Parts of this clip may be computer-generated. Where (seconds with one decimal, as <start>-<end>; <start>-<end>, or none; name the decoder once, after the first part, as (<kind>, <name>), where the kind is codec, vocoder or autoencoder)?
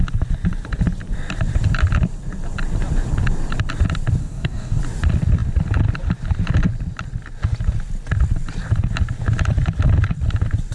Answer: 4.2-4.8 (codec, DAC)